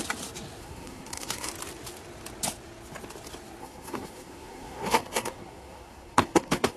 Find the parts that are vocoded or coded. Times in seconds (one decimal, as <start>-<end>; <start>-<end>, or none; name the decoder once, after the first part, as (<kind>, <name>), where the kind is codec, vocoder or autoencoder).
0.6-1.5 (codec, SNAC); 3.6-6.8